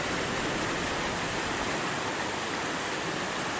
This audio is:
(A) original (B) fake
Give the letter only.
A